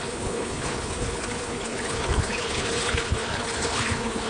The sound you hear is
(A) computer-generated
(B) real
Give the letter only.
A